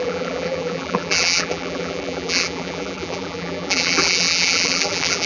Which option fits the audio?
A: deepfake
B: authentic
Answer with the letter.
A